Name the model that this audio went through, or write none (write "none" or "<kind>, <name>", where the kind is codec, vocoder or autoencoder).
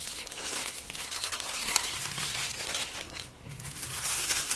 codec, SNAC